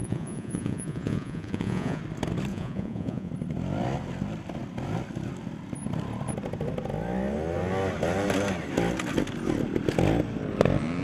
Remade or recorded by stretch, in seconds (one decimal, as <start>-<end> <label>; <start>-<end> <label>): 0.0-2.0 remade; 2.0-2.5 recorded; 2.5-3.3 remade; 3.3-11.0 recorded